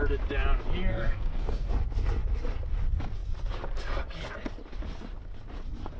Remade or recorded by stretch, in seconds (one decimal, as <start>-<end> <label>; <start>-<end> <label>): 0.0-0.9 recorded; 0.9-1.7 remade; 1.7-6.0 recorded